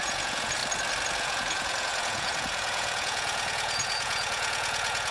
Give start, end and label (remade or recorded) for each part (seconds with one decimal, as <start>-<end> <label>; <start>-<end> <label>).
0.0-0.6 remade; 0.6-1.2 recorded; 1.2-5.1 remade